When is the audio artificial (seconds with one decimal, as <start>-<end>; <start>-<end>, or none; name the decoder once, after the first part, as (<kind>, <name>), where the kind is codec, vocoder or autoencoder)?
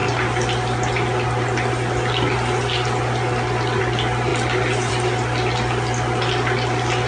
none